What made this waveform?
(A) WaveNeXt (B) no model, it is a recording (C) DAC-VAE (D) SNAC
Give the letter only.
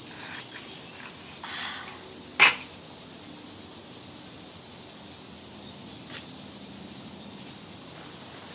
B